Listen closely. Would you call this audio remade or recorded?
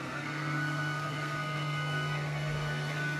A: remade